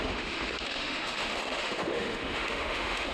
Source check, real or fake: fake